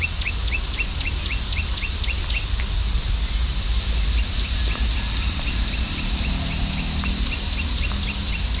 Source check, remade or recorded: recorded